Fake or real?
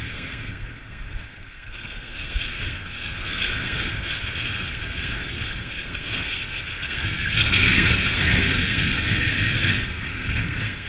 fake